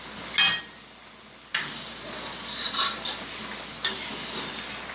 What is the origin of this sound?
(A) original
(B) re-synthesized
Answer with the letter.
A